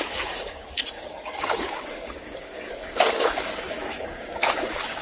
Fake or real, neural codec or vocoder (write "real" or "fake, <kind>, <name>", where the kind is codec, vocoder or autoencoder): fake, codec, DAC